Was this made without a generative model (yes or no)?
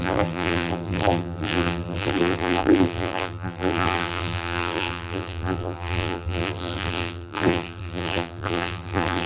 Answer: no